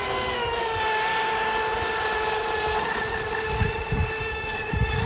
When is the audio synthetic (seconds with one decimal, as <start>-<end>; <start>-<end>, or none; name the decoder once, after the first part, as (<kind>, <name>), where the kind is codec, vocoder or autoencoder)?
0.0-1.1 (codec, DAC); 4.2-5.1